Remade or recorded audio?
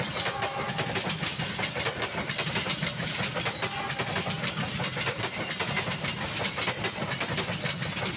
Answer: recorded